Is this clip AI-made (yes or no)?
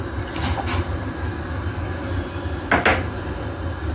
no